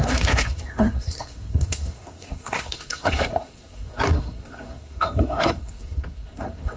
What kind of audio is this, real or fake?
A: fake